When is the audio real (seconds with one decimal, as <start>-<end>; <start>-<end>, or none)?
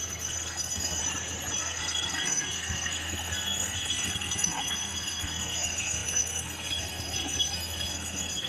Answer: 1.0-1.6